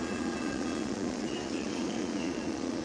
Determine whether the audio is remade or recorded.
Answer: remade